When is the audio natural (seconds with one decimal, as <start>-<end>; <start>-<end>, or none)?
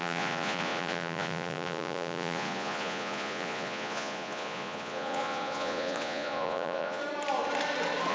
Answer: 7.0-8.1